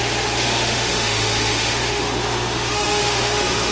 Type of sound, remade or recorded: remade